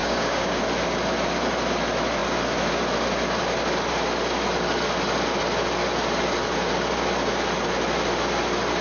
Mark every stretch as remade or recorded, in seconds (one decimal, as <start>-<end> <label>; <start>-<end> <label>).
0.0-0.6 remade; 0.6-8.8 recorded